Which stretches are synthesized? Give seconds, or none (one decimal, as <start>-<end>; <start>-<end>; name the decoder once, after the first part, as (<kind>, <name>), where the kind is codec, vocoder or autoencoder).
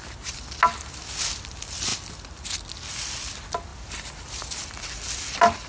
none